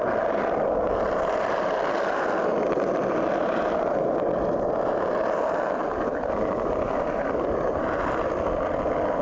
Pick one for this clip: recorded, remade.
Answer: recorded